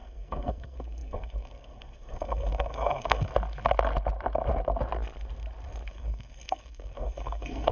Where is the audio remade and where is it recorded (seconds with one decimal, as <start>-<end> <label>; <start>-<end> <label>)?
0.0-3.3 remade; 3.3-5.9 recorded; 5.9-7.7 remade